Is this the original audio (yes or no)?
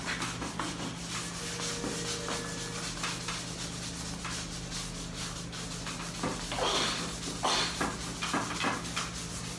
yes